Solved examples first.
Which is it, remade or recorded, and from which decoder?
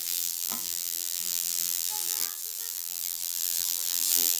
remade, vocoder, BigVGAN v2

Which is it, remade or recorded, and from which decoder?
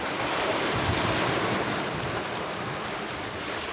remade, vocoder, BigVGAN v2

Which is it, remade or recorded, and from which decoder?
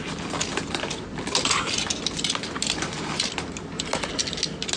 recorded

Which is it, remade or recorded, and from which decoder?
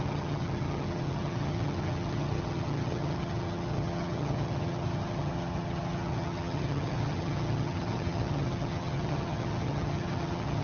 remade, vocoder, HiFi-GAN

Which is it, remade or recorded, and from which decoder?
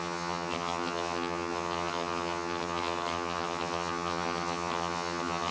remade, vocoder, HiFi-GAN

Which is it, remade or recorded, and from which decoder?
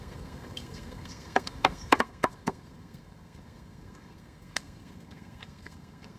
remade, codec, SNAC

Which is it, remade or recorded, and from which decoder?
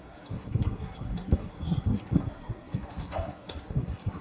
remade, codec, SNAC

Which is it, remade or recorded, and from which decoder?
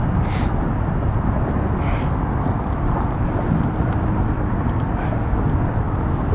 recorded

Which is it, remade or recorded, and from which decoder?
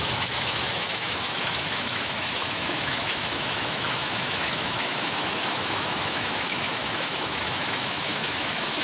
remade, autoencoder, DAC-VAE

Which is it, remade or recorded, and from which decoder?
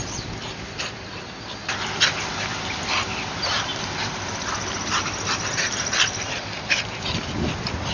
remade, vocoder, BigVGAN v2